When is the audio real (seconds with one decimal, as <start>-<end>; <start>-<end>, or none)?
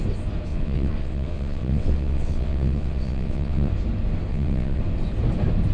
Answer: 0.0-0.5; 3.7-4.3; 4.8-5.7